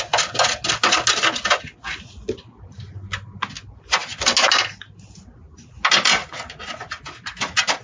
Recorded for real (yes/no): yes